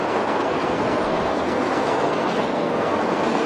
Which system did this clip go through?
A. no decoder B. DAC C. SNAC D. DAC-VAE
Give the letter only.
C